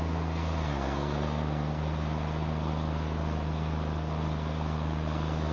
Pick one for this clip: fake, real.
fake